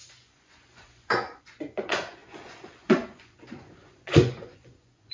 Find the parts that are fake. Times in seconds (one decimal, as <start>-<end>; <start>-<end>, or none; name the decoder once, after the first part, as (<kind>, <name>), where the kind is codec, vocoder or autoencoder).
0.0-5.1 (vocoder, Vocos)